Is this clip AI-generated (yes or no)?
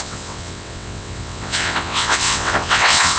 yes